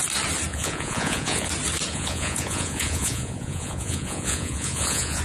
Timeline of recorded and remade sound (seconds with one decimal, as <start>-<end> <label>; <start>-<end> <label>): 0.0-0.5 recorded; 0.5-1.5 remade; 1.5-1.9 recorded; 1.9-5.2 remade